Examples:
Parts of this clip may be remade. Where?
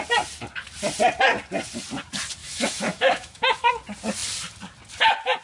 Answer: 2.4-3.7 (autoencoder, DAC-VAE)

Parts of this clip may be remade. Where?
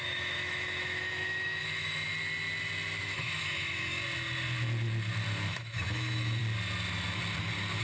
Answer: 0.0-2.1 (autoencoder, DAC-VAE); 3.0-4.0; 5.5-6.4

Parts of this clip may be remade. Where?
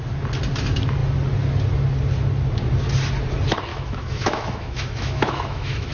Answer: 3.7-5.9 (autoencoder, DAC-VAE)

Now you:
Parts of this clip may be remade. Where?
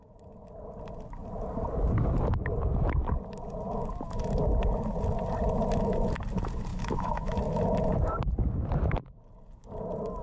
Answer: 6.7-7.4 (autoencoder, DAC-VAE)